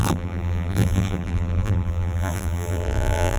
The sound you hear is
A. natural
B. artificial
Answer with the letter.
B